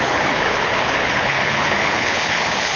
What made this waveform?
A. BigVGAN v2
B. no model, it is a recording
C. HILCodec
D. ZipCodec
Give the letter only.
C